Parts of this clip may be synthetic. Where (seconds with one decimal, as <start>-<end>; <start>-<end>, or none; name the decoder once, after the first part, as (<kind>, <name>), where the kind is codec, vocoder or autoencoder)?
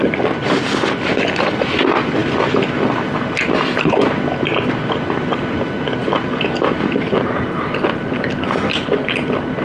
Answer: 6.0-8.1 (vocoder, BigVGAN v2)